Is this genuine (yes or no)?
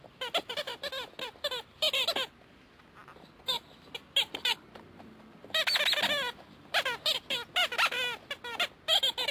yes